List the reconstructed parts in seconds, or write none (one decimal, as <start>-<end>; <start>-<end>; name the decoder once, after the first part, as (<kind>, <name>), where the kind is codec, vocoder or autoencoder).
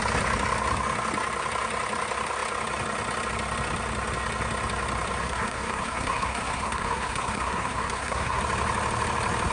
5.2-8.4 (codec, SNAC)